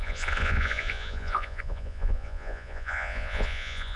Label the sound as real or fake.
fake